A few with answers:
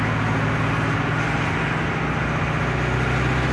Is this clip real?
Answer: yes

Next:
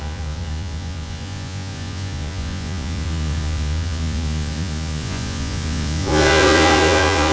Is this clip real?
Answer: no